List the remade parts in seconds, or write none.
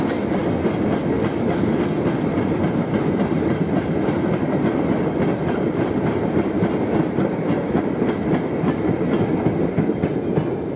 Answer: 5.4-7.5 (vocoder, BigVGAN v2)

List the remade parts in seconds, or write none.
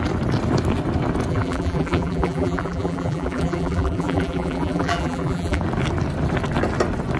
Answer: 1.3-5.6 (vocoder, BigVGAN v2)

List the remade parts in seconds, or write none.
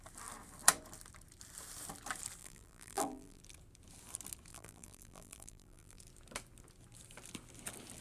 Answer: 2.4-3.4 (vocoder, BigVGAN v2); 4.5-6.0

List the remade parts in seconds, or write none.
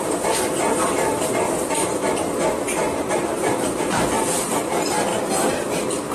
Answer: 2.8-3.8 (vocoder, BigVGAN v2)